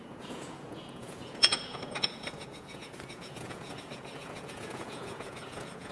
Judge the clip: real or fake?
fake